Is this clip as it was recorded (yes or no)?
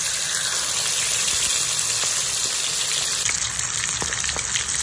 yes